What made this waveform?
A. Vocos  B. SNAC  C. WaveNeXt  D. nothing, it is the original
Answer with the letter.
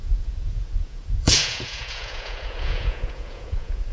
A